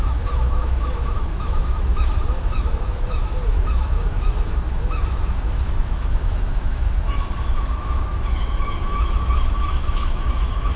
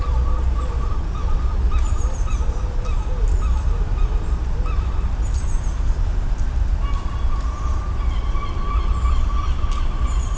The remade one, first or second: first